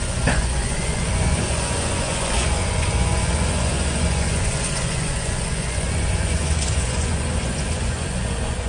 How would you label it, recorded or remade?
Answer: remade